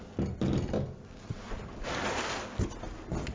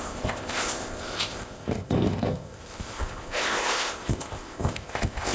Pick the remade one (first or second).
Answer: second